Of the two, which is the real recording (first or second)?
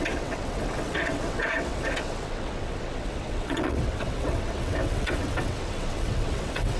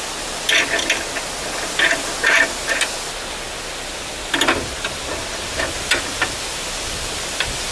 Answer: second